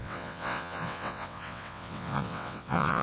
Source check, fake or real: fake